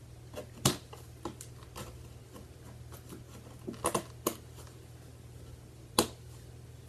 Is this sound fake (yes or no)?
no